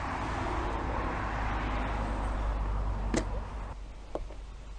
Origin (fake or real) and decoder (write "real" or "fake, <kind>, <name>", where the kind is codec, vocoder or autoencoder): real